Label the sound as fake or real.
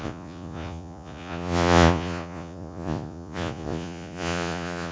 fake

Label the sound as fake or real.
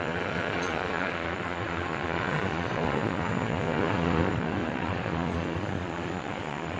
fake